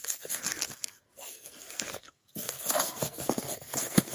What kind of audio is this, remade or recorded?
remade